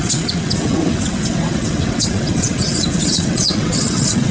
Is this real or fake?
fake